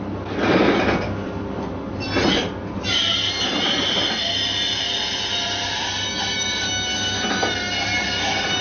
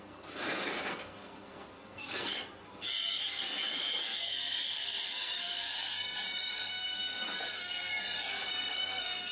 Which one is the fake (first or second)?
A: second